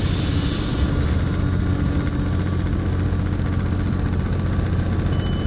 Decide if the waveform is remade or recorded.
recorded